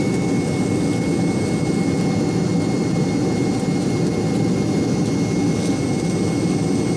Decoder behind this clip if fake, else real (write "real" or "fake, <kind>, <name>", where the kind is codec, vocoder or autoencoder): real